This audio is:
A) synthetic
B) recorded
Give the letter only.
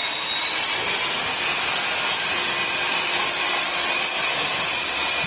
A